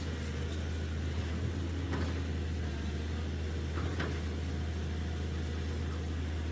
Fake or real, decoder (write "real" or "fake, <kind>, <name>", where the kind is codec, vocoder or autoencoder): real